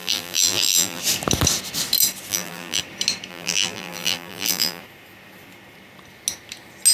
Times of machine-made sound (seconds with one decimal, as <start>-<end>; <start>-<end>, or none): 0.0-1.0; 2.3-2.8; 3.3-4.8